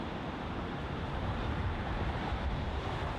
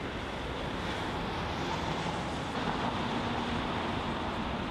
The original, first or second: second